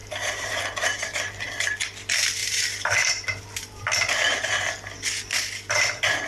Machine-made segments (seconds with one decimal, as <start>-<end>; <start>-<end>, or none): 0.0-0.6; 2.4-4.5